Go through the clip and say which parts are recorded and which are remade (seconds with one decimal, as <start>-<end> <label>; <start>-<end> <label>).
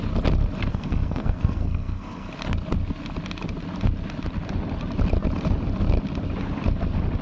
0.0-0.7 recorded; 0.7-2.3 remade; 2.3-7.2 recorded